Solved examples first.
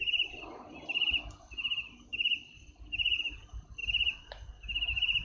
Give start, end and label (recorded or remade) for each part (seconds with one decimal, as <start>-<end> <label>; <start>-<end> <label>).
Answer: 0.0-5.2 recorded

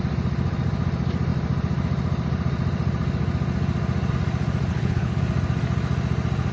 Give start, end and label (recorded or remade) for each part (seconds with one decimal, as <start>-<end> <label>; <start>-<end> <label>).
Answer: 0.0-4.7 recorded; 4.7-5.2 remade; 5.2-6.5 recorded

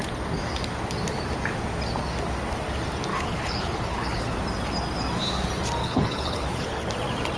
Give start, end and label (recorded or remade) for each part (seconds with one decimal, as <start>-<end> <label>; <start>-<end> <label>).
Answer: 0.0-3.1 recorded; 3.1-4.3 remade; 4.3-5.8 recorded; 5.8-6.9 remade; 6.9-7.4 recorded